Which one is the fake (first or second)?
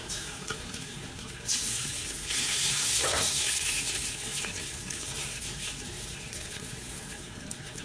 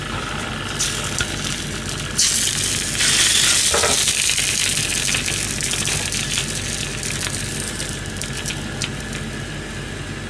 first